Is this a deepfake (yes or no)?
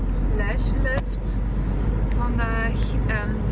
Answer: no